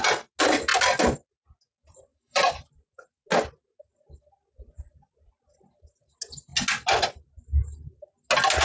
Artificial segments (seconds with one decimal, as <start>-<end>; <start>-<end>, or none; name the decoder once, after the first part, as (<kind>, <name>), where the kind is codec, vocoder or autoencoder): 2.1-2.7 (vocoder, BigVGAN v2)